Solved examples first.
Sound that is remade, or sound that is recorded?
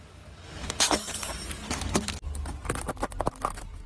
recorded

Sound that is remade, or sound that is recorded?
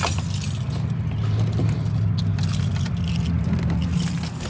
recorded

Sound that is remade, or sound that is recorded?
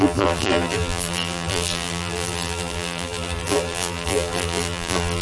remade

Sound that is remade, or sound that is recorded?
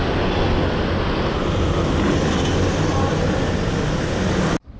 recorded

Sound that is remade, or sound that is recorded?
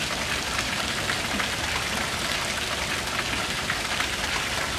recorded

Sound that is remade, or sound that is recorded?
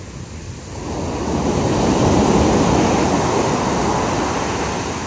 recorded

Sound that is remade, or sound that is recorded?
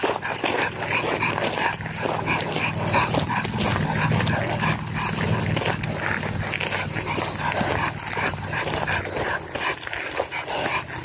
recorded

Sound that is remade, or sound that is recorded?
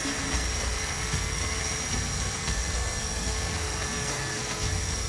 remade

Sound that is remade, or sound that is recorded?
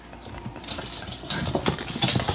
recorded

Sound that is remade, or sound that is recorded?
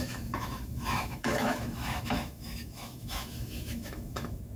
remade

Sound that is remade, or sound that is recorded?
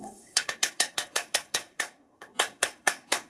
remade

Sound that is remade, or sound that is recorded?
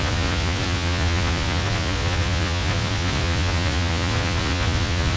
remade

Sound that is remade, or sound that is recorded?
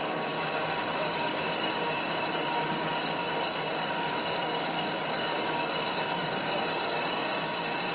remade